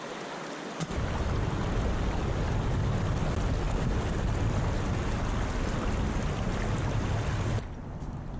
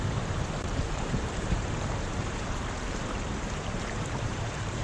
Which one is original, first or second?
first